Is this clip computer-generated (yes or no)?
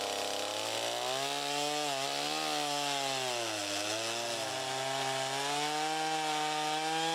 no